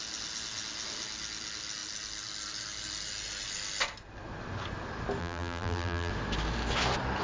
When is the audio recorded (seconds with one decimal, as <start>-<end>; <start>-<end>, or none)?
0.0-5.2; 6.1-7.2